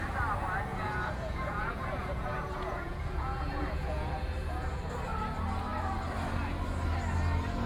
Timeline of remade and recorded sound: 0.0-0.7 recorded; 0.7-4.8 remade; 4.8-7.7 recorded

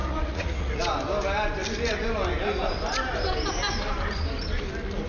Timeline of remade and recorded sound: 0.0-0.8 remade; 0.8-5.1 recorded

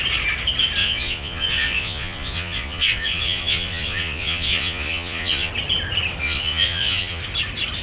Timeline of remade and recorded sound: 0.0-0.8 recorded; 0.8-5.5 remade; 5.5-6.2 recorded; 6.2-7.2 remade; 7.2-7.8 recorded

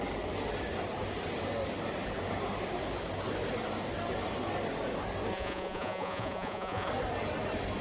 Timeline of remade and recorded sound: 0.0-5.3 recorded; 5.3-6.9 remade; 6.9-7.8 recorded

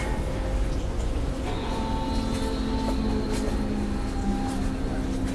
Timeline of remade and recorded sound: 0.0-0.6 recorded; 0.6-1.8 remade; 1.8-5.3 recorded

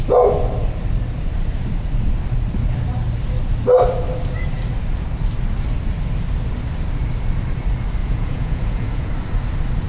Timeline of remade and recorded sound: 0.0-8.0 recorded; 8.0-9.1 remade; 9.1-9.9 recorded

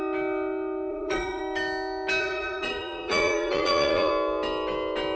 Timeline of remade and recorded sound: 0.0-0.9 recorded; 0.9-1.4 remade; 1.4-2.2 recorded; 2.2-4.1 remade; 4.1-5.2 recorded